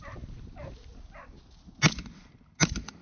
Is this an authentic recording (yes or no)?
yes